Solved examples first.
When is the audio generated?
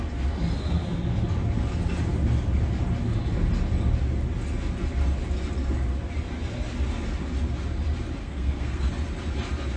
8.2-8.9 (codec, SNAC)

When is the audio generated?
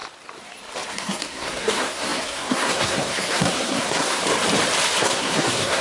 0.9-4.2 (codec, SNAC); 5.0-5.8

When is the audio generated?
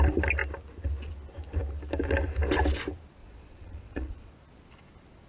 3.2-4.3 (vocoder, Vocos)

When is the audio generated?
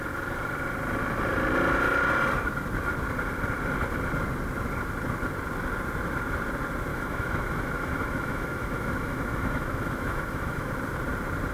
6.9-10.7 (autoencoder, DAC-VAE)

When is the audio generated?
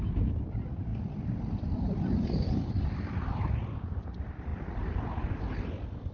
none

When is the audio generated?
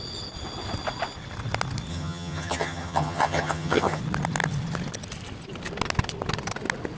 1.9-4.0 (vocoder, HiFi-GAN)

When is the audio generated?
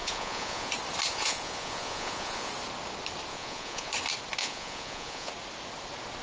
0.0-0.7 (vocoder, Vocos); 1.1-2.5; 3.3-3.9; 4.4-5.3